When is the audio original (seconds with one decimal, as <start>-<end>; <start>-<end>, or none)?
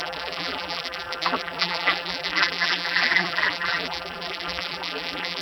none